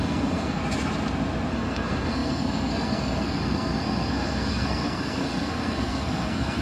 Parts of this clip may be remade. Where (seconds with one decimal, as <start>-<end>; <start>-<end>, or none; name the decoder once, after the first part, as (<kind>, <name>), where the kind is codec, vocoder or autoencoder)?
0.0-0.6 (codec, SNAC); 1.5-6.6